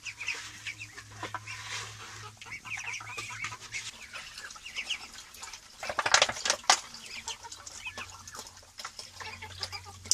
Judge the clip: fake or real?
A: real